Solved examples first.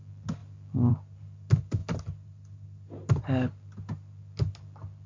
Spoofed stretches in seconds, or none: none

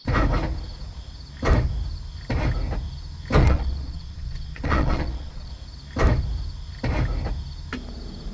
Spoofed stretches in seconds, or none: 3.4-5.5 (vocoder, Vocos)

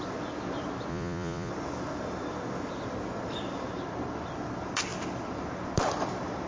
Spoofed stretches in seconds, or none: 0.9-1.5 (vocoder, Vocos)

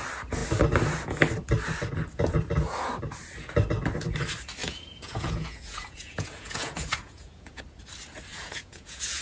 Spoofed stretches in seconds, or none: 4.6-7.6 (vocoder, Vocos); 8.3-9.2

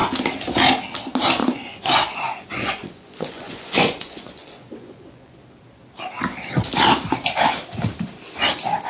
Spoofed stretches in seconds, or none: 1.4-5.4 (vocoder, Vocos)

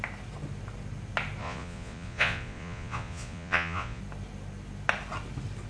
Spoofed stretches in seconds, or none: 1.4-4.0 (vocoder, Vocos)

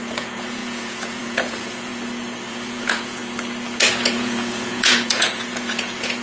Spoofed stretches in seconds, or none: 0.0-1.9 (vocoder, Vocos); 2.5-3.2; 3.9-6.2